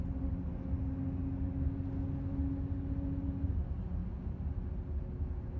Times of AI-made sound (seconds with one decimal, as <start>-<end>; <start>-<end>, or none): none